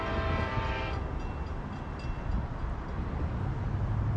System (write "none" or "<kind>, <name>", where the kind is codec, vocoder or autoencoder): none